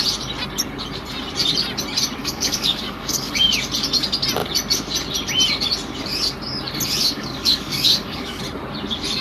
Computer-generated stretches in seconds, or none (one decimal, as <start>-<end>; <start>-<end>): 2.2-3.5; 7.0-8.4